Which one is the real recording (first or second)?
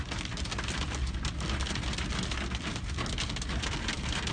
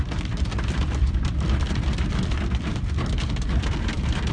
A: first